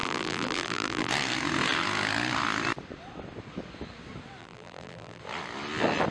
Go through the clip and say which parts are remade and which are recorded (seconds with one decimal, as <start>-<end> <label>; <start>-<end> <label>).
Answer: 0.0-1.1 remade; 1.1-4.4 recorded; 4.4-5.2 remade; 5.2-6.1 recorded